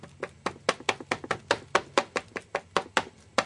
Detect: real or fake real